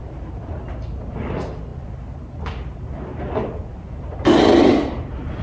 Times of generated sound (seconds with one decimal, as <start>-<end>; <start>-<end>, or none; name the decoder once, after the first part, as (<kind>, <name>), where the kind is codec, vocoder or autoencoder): none

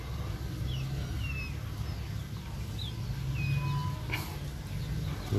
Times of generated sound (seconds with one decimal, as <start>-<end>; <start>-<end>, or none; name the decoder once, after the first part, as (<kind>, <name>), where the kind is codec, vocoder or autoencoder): none

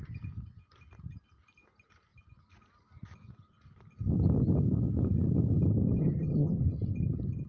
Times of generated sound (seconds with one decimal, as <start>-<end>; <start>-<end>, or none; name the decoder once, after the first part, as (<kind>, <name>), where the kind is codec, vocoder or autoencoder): 6.0-6.6 (vocoder, HiFi-GAN)

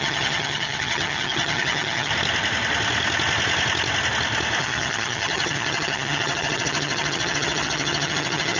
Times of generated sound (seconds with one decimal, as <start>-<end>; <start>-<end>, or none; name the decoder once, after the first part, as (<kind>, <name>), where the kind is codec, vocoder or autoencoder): 0.0-2.1 (vocoder, HiFi-GAN); 4.6-8.6

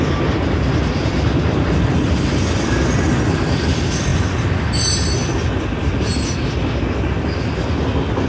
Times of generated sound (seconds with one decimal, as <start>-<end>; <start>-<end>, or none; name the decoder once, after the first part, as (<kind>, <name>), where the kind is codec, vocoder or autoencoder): none

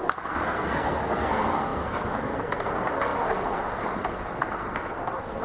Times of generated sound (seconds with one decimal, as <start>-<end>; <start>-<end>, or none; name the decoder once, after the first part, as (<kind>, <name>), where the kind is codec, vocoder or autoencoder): 0.0-5.4 (codec, SNAC)